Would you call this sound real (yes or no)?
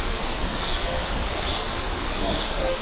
no